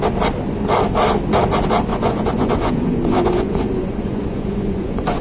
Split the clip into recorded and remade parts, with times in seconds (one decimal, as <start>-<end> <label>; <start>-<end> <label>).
0.0-1.9 recorded; 1.9-5.2 remade